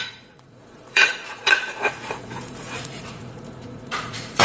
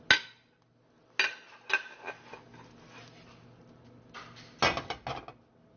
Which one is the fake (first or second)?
first